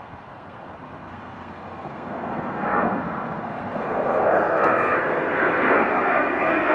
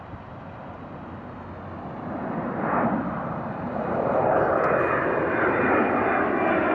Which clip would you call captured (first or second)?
second